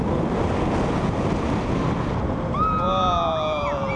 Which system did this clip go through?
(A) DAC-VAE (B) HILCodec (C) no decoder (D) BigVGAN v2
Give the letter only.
C